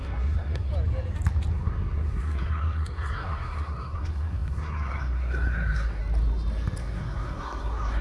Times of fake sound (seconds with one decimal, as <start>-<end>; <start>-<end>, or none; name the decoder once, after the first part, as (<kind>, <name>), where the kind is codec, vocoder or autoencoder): 0.0-0.7 (codec, SNAC); 1.5-6.0; 6.8-8.0